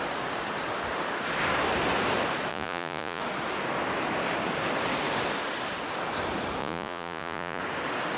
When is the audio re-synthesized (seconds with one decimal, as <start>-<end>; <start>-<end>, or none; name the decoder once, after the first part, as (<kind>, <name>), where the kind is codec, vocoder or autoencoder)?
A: 2.5-3.2 (vocoder, Vocos); 6.6-7.6